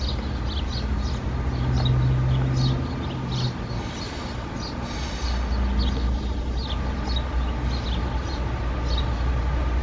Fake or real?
real